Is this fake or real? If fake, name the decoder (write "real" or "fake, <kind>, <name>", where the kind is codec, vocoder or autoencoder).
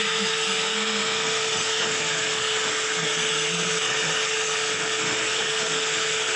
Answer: fake, codec, SNAC